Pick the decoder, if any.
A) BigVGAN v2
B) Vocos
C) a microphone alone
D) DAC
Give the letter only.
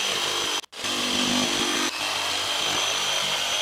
C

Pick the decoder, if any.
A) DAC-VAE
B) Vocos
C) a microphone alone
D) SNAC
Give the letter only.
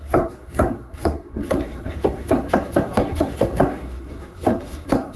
D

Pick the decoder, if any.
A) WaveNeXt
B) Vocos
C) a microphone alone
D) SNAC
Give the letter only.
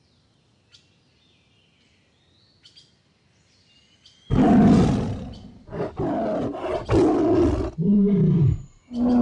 C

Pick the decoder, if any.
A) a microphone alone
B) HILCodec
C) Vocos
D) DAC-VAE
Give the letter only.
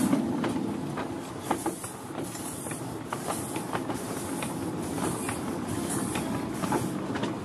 A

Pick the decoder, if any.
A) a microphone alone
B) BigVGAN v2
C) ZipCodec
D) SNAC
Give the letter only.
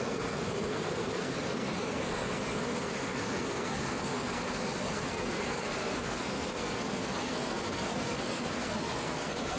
D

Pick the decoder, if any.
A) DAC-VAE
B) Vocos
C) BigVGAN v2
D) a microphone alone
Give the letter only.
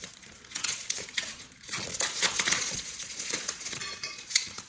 B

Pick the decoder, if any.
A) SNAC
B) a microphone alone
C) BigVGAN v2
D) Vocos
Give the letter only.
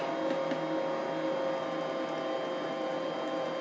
B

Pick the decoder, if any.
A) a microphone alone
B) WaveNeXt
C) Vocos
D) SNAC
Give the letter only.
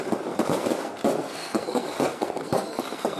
D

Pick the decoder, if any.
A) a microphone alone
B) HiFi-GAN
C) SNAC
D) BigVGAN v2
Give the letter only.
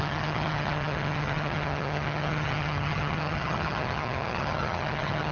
B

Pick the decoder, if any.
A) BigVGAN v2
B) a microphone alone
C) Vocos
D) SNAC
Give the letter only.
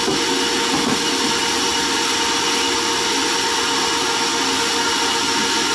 B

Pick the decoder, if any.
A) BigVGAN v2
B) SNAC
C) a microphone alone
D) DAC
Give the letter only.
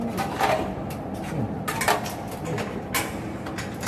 C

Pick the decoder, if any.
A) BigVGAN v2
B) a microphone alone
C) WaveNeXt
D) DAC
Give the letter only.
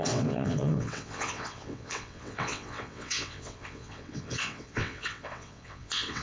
C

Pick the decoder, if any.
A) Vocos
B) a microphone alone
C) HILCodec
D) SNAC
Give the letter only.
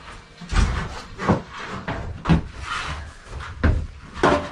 B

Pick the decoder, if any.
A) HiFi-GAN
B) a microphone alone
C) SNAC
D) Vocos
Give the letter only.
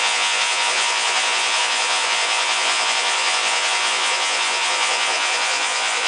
D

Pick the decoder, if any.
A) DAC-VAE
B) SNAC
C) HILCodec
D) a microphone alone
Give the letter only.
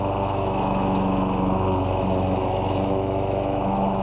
A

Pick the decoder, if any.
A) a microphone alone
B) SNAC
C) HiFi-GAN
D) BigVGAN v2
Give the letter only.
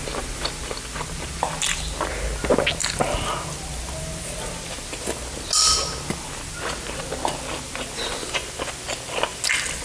A